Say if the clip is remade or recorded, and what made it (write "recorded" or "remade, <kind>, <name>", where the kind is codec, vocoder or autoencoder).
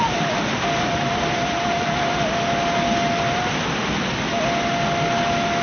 recorded